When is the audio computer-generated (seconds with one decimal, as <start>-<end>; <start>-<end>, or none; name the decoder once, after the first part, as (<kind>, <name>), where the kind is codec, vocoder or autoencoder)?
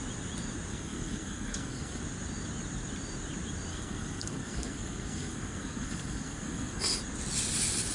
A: 0.7-2.0 (codec, SNAC); 3.7-6.8